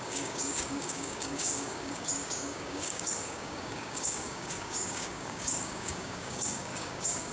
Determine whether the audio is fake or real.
fake